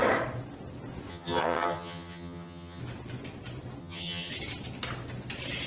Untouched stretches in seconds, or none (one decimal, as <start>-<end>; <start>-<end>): 0.0-1.1; 2.8-3.8; 4.3-5.7